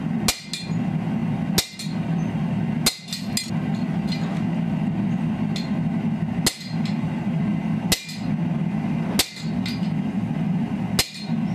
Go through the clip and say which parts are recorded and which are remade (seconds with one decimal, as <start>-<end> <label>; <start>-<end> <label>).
0.0-11.5 recorded